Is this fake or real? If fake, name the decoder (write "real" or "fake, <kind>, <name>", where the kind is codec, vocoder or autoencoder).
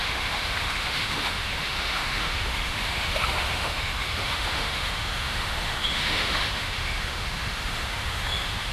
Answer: fake, autoencoder, DAC-VAE